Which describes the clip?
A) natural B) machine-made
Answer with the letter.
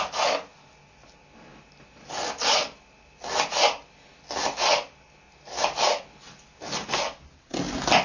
A